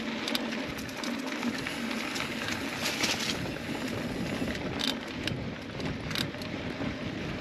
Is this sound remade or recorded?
recorded